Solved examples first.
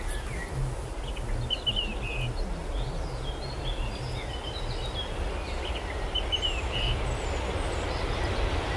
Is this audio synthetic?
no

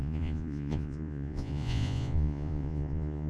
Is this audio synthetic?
yes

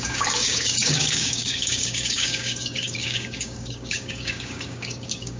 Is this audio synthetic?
yes